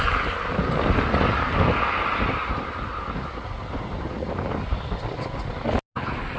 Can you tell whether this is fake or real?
real